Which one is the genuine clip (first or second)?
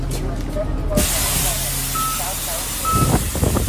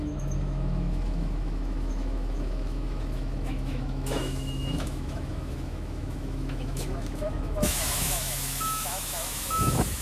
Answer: first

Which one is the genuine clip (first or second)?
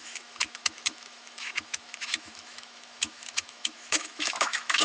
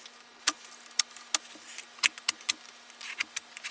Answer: second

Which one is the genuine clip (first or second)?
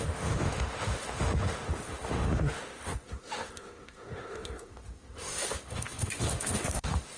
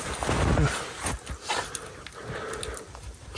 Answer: second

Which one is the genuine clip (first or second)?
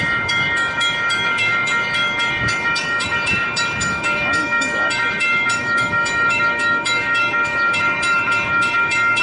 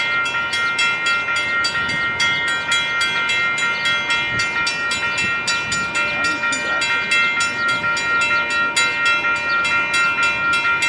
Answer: second